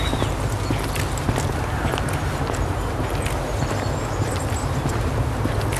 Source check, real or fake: real